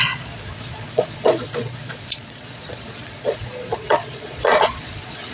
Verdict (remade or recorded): remade